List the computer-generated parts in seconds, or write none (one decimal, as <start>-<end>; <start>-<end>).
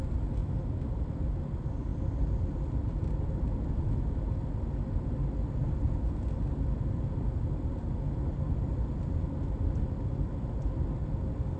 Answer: 1.9-3.7